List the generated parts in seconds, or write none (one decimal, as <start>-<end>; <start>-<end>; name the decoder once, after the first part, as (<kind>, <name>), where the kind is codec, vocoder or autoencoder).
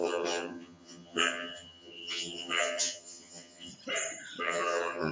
0.0-3.7 (vocoder, HiFi-GAN); 4.4-5.1